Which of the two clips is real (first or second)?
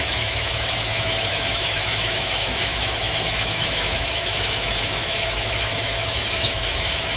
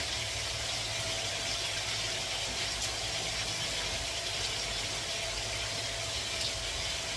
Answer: second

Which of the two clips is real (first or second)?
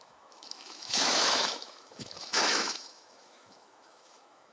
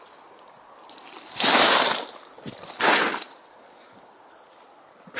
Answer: second